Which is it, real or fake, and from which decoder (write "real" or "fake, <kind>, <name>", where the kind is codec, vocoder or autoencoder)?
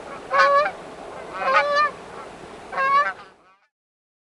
real